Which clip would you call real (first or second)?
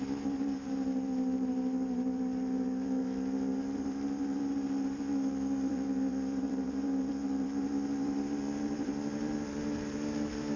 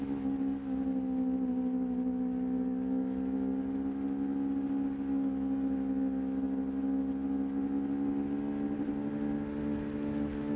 second